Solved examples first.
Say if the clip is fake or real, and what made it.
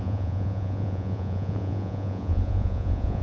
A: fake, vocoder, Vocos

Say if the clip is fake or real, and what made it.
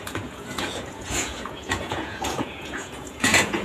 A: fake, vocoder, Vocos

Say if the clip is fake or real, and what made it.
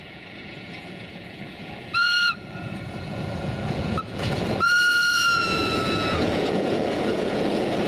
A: fake, vocoder, Vocos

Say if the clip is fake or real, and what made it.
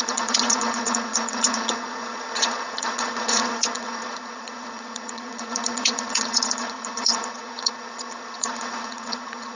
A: fake, vocoder, Vocos